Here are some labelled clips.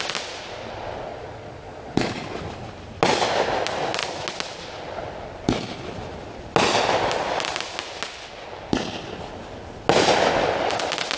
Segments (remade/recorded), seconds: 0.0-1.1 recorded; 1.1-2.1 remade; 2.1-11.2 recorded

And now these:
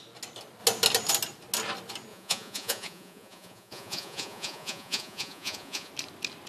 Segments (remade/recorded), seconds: 0.0-2.1 recorded; 2.1-5.9 remade; 5.9-6.5 recorded

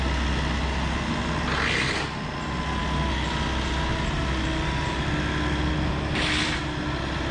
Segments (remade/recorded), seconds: 0.0-7.3 recorded

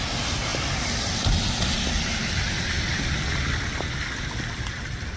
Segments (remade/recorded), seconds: 0.0-5.2 recorded